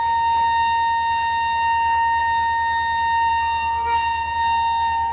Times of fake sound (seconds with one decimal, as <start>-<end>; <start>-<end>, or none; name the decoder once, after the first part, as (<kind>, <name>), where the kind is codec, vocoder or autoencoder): none